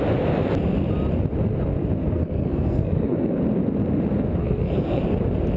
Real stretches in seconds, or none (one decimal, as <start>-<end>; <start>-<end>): 0.0-2.0; 3.4-4.4; 5.0-5.6